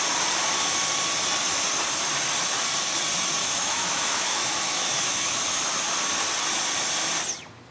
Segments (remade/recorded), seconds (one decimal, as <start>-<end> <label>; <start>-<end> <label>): 0.0-3.4 recorded; 3.4-5.4 remade; 5.4-7.7 recorded